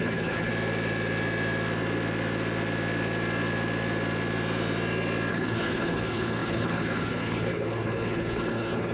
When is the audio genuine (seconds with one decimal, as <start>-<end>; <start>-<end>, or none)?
0.5-5.3